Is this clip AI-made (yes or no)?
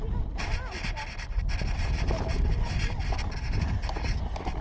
no